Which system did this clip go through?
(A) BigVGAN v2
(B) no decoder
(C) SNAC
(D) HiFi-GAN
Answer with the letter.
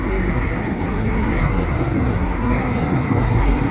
C